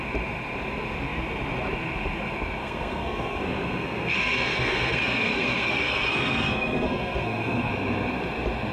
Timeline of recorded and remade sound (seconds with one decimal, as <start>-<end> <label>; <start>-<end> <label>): 0.0-2.6 recorded; 2.6-7.7 remade; 7.7-8.7 recorded